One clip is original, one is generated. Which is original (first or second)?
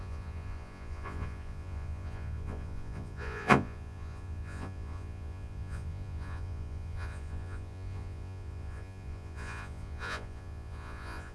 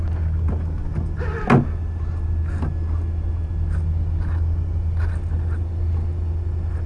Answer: second